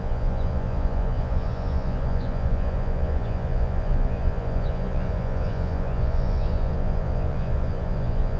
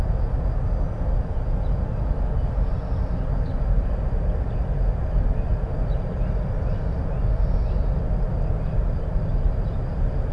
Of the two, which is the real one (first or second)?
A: second